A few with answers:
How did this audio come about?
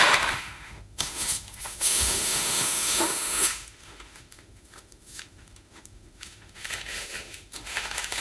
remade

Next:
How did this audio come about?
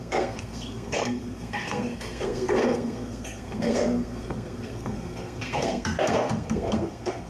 remade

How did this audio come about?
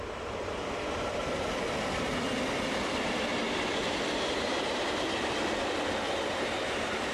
remade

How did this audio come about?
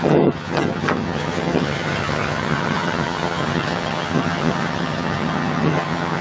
remade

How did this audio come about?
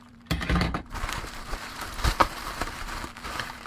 remade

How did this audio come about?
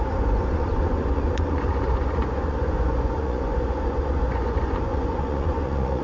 remade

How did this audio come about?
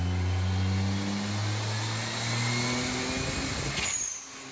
recorded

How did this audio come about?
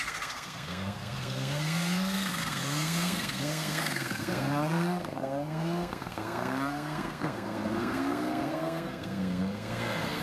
remade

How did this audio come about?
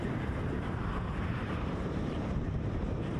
remade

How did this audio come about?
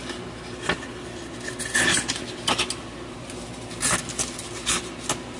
recorded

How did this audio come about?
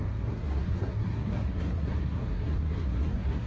remade